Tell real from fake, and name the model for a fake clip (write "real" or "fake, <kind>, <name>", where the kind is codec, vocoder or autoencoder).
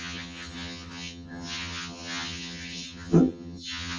fake, vocoder, HiFi-GAN